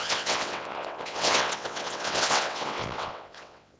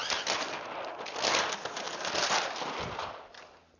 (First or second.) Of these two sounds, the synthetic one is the first